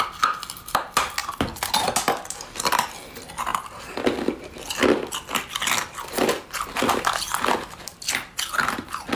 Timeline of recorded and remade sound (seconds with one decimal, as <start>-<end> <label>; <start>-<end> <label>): 0.0-9.2 recorded